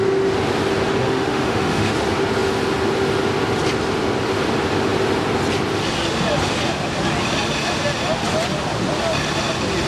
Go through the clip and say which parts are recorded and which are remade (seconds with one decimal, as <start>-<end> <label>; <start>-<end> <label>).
0.0-1.0 recorded; 1.0-1.9 remade; 1.9-9.9 recorded